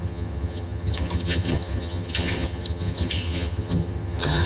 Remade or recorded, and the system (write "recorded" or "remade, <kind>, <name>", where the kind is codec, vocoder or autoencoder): remade, vocoder, HiFi-GAN